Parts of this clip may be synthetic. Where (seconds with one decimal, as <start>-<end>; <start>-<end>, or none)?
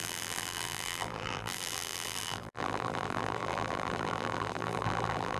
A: 0.0-5.4